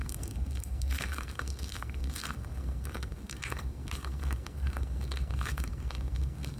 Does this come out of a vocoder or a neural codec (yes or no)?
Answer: yes